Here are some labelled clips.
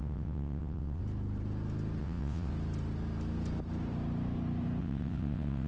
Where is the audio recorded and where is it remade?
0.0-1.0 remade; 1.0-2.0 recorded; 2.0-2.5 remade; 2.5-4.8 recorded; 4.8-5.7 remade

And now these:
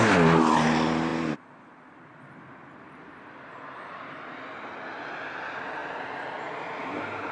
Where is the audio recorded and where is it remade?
0.0-7.3 recorded

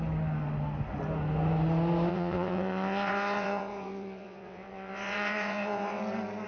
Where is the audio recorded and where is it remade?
0.0-2.1 recorded; 2.1-6.0 remade; 6.0-6.5 recorded

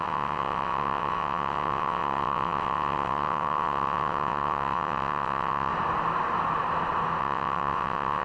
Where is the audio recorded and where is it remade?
0.0-5.7 remade; 5.7-7.2 recorded; 7.2-8.2 remade

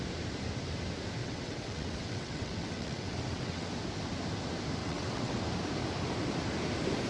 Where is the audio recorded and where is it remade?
0.0-1.2 recorded; 1.2-3.7 remade; 3.7-4.8 recorded; 4.8-5.4 remade; 5.4-7.1 recorded

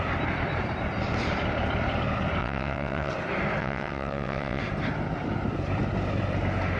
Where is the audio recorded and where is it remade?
0.0-2.4 recorded; 2.4-3.1 remade; 3.1-3.6 recorded; 3.6-4.6 remade; 4.6-6.8 recorded

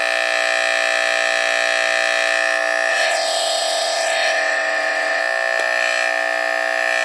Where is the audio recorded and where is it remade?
0.0-2.9 recorded; 2.9-5.2 remade; 5.2-7.0 recorded